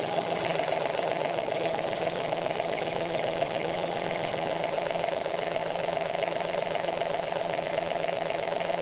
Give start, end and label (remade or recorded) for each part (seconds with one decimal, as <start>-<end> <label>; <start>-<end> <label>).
0.0-8.8 remade

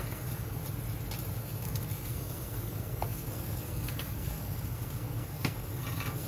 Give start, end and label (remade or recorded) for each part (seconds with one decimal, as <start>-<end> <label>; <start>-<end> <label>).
0.0-0.6 remade; 0.6-1.4 recorded; 1.4-6.3 remade

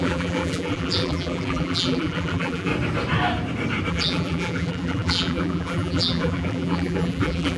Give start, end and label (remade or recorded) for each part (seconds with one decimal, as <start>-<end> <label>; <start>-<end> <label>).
0.0-2.7 remade; 2.7-3.9 recorded; 3.9-7.6 remade

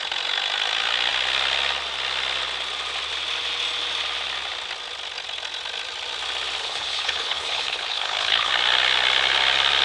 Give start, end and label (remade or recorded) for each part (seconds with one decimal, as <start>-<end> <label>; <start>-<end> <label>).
0.0-6.6 recorded; 6.6-8.5 remade; 8.5-9.8 recorded

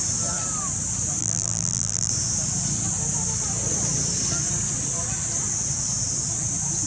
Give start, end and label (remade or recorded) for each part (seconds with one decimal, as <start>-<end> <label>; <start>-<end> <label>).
0.0-1.2 recorded; 1.2-2.1 remade; 2.1-6.9 recorded

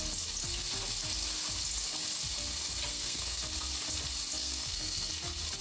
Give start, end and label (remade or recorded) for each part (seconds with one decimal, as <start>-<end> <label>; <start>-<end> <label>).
0.0-2.9 recorded; 2.9-3.4 remade; 3.4-4.4 recorded; 4.4-5.1 remade; 5.1-5.6 recorded